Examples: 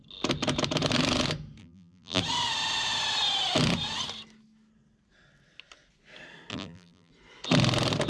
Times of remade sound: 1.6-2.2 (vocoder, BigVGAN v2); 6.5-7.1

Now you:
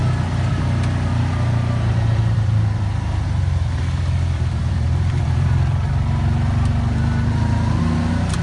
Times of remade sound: 1.9-5.9 (vocoder, BigVGAN v2)